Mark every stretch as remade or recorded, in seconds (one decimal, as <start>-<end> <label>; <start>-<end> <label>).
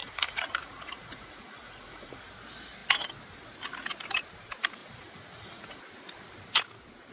0.0-2.2 remade; 2.2-4.8 recorded; 4.8-5.8 remade; 5.8-7.1 recorded